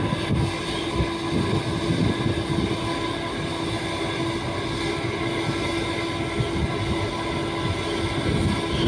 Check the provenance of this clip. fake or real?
real